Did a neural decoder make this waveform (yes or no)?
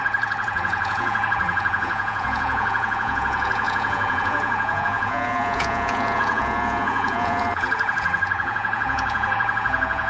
yes